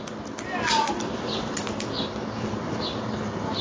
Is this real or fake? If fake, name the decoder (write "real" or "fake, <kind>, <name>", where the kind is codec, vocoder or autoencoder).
real